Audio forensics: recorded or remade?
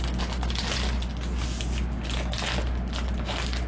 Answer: recorded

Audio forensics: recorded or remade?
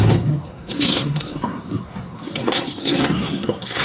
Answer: remade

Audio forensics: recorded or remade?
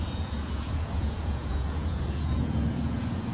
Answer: remade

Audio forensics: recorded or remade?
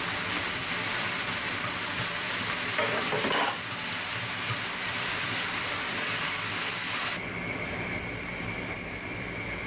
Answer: remade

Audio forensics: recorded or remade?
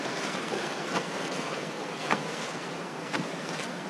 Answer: remade